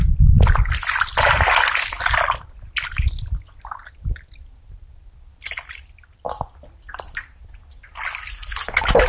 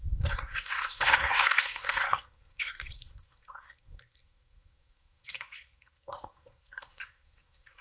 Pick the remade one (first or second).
second